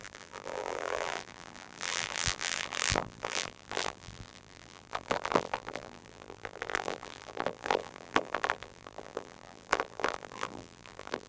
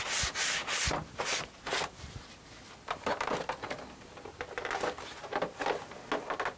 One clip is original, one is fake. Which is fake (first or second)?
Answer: first